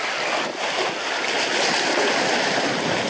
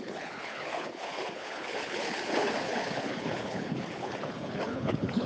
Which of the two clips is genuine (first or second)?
first